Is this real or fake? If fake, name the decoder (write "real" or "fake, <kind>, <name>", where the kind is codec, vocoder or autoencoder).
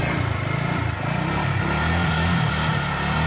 fake, vocoder, BigVGAN v2